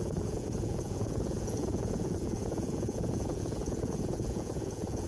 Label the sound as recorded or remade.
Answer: remade